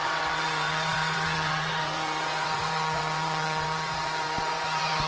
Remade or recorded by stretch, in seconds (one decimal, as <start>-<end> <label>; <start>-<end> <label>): 0.0-5.1 remade

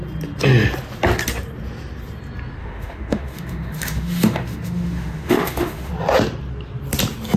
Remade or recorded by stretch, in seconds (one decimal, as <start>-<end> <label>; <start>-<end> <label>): 0.0-2.6 recorded; 2.6-5.9 remade; 5.9-7.4 recorded

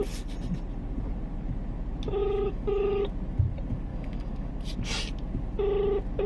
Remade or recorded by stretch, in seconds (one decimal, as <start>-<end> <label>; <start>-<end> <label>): 0.0-2.2 recorded; 2.2-3.0 remade; 3.0-3.9 recorded; 3.9-4.5 remade; 4.5-6.3 recorded

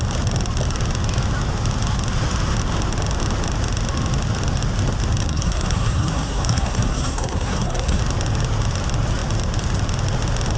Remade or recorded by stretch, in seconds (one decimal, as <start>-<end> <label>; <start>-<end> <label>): 0.0-5.3 recorded; 5.3-8.0 remade; 8.0-10.6 recorded

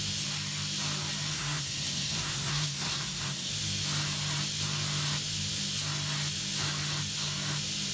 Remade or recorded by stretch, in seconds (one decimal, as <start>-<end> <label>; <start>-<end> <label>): 0.0-1.3 recorded; 1.3-3.5 remade; 3.5-7.9 recorded

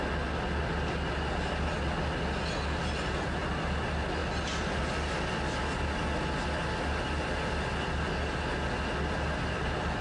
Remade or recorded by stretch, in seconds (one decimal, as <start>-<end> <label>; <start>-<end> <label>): 0.0-10.0 recorded